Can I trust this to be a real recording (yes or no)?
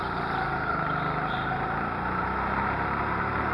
yes